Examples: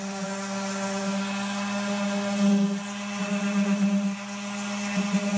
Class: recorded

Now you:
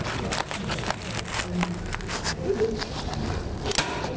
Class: recorded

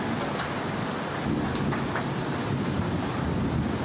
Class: recorded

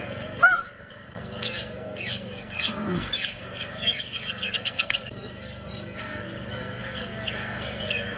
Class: remade